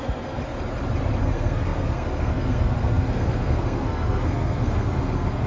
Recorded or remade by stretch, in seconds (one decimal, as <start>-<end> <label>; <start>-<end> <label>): 0.0-0.4 remade; 0.4-1.2 recorded; 1.2-5.5 remade